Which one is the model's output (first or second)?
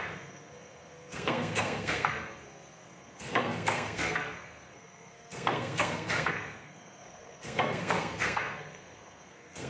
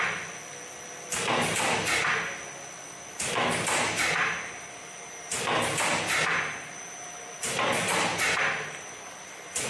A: first